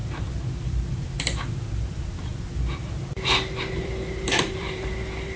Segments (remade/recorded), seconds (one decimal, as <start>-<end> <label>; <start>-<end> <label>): 0.0-5.4 remade

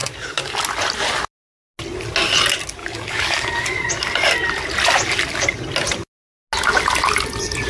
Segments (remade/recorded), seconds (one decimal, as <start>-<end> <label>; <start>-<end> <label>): 0.0-0.6 remade; 0.6-2.8 recorded; 2.8-3.9 remade; 3.9-7.7 recorded

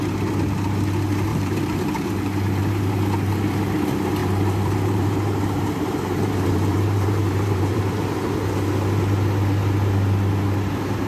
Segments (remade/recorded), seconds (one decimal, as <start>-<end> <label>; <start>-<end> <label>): 0.0-1.3 recorded; 1.3-2.9 remade; 2.9-4.2 recorded; 4.2-7.8 remade; 7.8-11.1 recorded

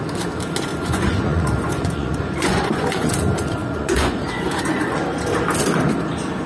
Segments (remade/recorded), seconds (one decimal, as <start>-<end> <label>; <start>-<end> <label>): 0.0-0.7 recorded; 0.7-3.1 remade; 3.1-3.6 recorded; 3.6-5.0 remade; 5.0-6.5 recorded

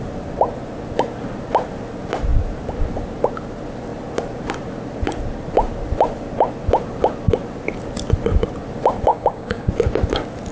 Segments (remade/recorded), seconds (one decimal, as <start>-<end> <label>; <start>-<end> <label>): 0.0-9.1 recorded; 9.1-9.7 remade; 9.7-10.5 recorded

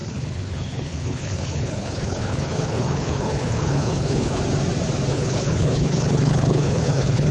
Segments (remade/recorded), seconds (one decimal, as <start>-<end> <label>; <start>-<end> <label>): 0.0-4.4 remade; 4.4-5.1 recorded; 5.1-7.3 remade